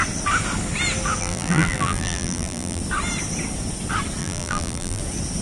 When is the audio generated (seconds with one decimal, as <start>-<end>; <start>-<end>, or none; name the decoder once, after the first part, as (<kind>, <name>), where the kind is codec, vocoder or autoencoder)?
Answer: 1.2-2.8 (vocoder, BigVGAN v2); 4.2-5.0

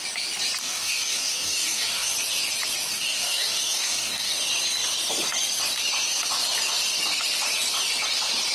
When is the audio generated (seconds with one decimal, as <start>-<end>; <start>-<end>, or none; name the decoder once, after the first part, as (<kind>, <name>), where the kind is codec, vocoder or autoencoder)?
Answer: 0.6-2.1 (codec, DAC); 2.9-4.3

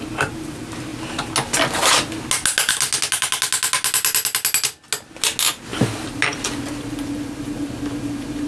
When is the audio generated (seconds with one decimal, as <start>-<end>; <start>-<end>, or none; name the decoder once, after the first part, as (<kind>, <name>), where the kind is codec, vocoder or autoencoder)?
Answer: none